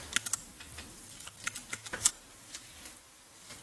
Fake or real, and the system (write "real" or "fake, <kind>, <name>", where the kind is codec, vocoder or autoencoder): real